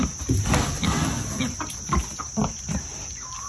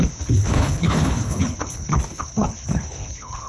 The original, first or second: first